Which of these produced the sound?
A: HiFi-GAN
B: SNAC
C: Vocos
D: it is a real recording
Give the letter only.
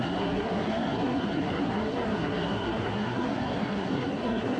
B